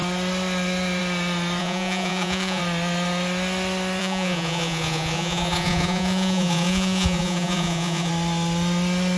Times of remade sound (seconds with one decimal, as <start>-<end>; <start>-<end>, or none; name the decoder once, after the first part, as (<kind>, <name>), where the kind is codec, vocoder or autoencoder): 1.6-2.6 (vocoder, Vocos); 4.0-8.1